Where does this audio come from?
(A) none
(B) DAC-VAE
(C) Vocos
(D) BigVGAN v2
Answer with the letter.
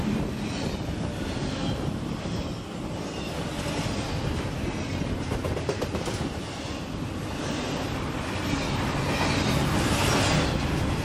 A